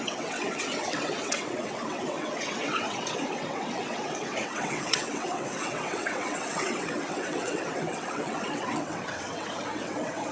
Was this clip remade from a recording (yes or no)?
yes